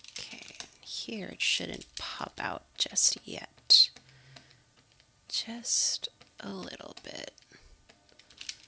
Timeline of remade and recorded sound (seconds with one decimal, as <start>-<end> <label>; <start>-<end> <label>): 0.0-4.5 recorded; 4.5-6.1 remade; 6.1-8.7 recorded